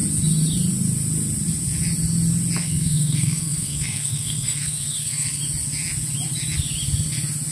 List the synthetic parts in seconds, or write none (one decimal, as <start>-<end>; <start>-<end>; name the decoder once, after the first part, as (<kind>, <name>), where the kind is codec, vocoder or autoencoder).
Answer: 2.6-5.4 (codec, SNAC)